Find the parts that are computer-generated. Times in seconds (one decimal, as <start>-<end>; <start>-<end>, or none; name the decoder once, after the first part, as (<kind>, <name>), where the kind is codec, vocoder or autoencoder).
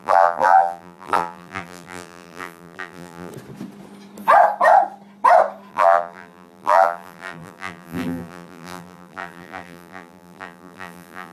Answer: 0.0-3.3 (vocoder, BigVGAN v2); 5.7-11.3